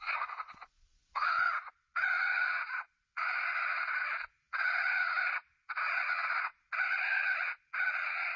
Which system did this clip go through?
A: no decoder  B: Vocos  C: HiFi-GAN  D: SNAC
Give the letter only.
B